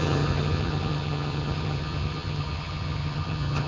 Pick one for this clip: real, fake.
fake